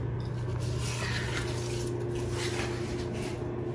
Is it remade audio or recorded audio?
recorded